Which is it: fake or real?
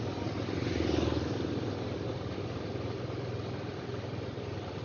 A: real